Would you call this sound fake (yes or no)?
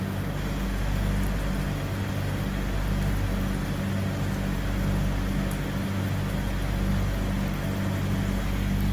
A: no